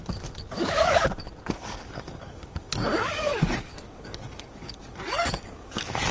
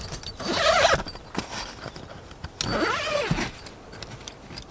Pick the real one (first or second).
second